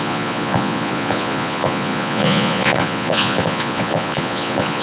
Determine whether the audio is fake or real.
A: fake